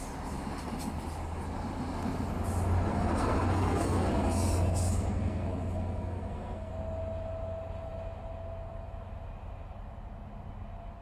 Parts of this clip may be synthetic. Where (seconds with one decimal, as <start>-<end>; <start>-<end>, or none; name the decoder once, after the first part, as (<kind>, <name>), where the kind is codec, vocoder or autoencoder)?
2.9-6.7 (codec, SNAC)